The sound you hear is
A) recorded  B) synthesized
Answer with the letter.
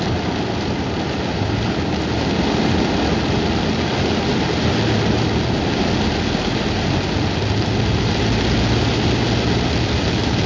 A